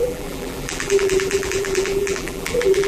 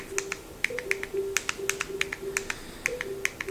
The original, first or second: second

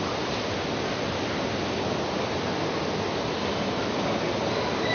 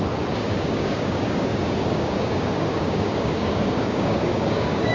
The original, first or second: first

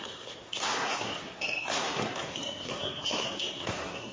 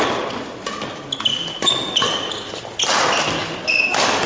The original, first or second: second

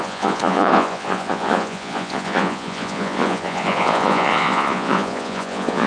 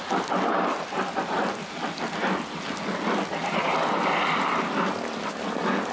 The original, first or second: second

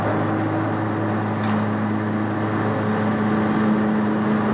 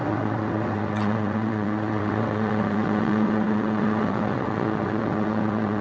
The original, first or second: first